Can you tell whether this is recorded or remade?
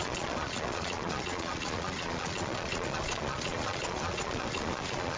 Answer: remade